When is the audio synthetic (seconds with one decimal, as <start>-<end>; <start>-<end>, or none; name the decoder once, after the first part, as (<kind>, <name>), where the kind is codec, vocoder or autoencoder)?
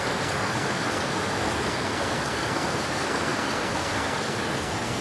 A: 0.0-5.0 (codec, SNAC)